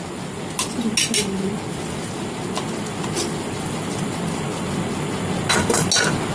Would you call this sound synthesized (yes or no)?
no